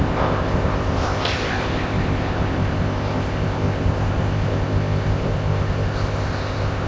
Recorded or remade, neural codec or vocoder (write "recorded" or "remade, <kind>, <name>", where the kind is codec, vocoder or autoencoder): remade, codec, ZipCodec